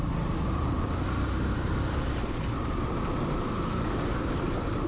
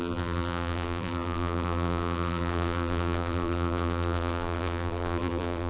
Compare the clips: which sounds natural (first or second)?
first